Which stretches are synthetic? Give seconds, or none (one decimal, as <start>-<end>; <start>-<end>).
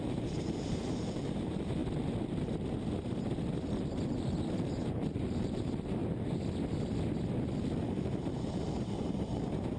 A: 0.0-1.8; 4.7-6.0; 7.9-9.8